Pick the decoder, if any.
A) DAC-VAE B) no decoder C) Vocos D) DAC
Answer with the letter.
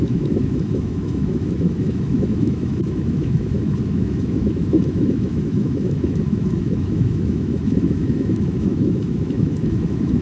A